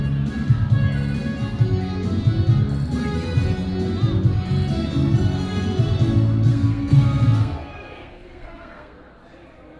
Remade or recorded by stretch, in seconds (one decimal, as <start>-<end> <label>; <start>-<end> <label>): 0.0-6.5 recorded; 6.5-9.1 remade; 9.1-9.8 recorded